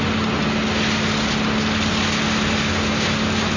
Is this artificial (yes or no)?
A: no